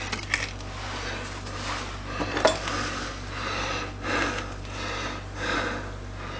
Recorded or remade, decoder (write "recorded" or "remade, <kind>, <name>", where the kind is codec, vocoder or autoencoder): recorded